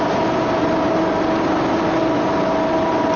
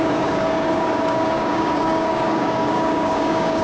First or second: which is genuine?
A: first